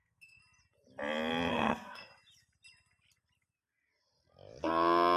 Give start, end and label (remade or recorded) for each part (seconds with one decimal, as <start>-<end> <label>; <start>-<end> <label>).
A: 0.0-0.4 remade; 0.4-1.5 recorded; 1.5-2.1 remade; 2.1-5.2 recorded